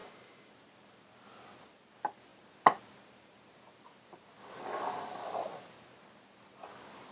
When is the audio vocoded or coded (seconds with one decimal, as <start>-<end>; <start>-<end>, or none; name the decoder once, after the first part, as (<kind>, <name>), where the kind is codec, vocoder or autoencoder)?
0.0-0.5 (codec, DAC)